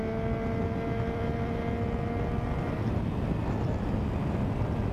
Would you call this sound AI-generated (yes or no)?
no